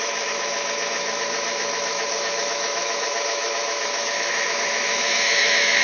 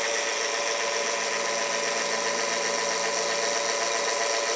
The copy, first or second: first